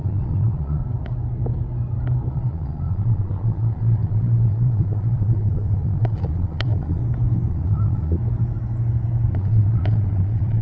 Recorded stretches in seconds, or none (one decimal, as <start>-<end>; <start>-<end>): 0.8-2.3; 7.0-7.5; 8.2-9.3